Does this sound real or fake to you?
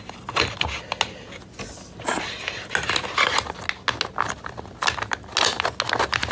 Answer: real